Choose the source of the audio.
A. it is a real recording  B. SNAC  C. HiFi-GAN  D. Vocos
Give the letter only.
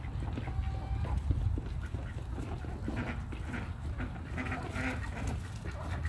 A